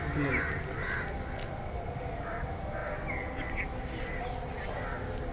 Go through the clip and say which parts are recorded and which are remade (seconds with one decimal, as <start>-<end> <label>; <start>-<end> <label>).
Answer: 0.0-5.3 recorded